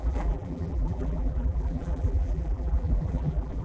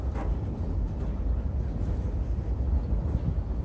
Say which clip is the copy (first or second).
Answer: first